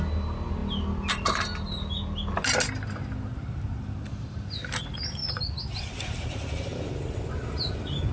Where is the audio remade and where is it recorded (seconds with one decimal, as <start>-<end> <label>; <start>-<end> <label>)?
0.0-6.7 recorded; 6.7-7.4 remade; 7.4-8.1 recorded